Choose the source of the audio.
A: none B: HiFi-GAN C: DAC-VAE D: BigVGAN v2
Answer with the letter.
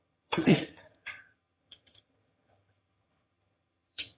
B